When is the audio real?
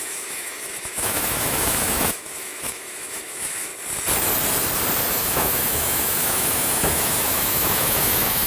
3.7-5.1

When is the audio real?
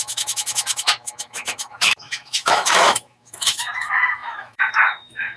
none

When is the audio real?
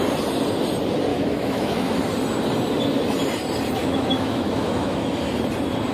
0.0-1.1; 1.9-3.8; 5.1-5.9